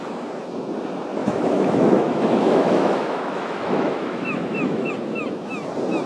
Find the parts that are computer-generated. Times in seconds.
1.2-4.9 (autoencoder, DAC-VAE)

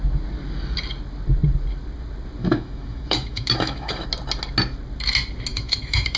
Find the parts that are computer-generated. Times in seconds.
2.4-4.1 (autoencoder, DAC-VAE); 5.5-6.2

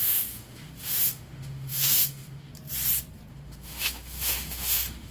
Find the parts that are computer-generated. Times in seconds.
0.0-2.5 (autoencoder, DAC-VAE); 3.3-5.1

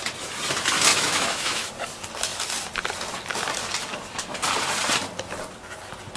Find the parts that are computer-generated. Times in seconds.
0.9-1.7 (autoencoder, DAC-VAE)

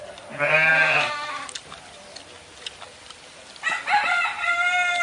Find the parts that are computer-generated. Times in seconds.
none

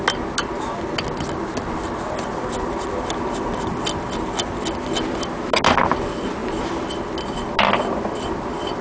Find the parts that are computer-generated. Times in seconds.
none

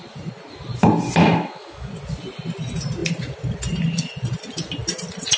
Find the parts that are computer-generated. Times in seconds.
1.2-1.9 (autoencoder, DAC-VAE)